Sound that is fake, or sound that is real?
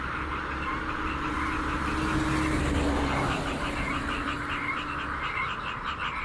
real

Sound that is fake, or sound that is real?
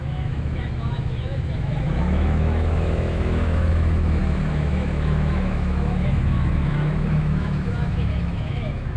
fake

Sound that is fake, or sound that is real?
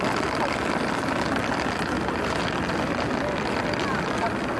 real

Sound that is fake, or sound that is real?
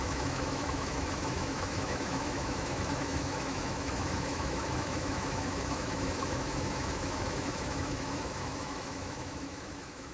fake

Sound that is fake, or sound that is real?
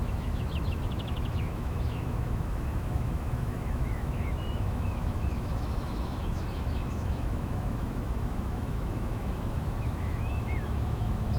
fake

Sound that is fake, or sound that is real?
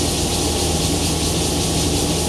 real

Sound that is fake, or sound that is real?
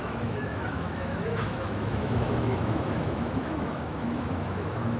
fake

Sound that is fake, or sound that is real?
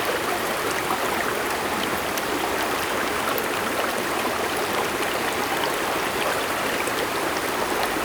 real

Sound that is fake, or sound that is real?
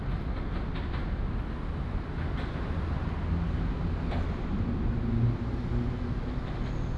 real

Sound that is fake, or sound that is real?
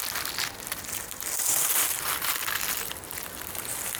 real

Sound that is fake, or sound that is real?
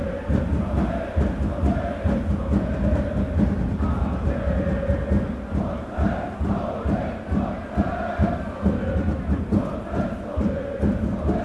real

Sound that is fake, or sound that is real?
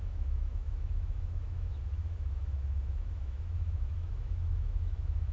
fake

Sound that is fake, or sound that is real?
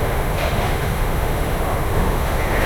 fake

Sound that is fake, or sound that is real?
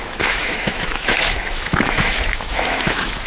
fake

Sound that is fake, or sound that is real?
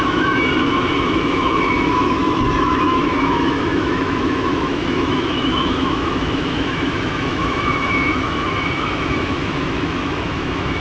fake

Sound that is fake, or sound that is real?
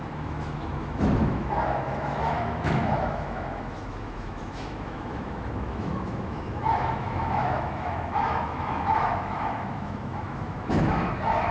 fake